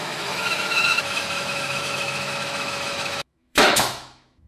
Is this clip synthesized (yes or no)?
yes